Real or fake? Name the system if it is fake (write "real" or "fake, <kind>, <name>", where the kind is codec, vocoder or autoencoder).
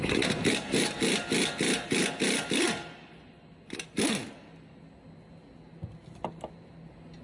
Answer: real